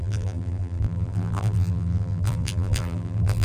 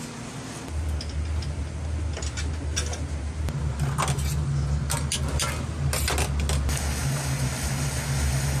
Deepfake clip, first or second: first